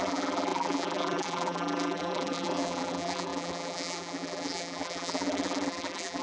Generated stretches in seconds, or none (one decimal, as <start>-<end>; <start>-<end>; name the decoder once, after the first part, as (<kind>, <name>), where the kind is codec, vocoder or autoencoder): 0.0-6.2 (vocoder, BigVGAN v2)